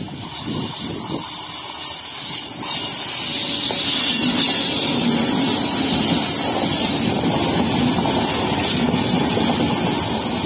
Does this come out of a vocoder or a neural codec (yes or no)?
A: no